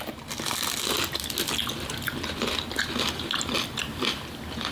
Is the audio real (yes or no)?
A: yes